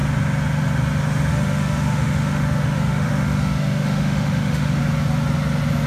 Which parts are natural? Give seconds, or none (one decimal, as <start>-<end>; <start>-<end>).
0.0-1.3; 4.8-5.9